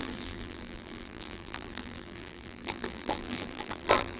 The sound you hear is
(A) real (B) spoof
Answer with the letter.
B